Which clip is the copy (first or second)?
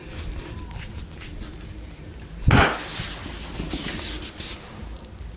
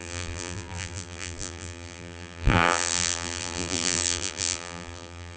second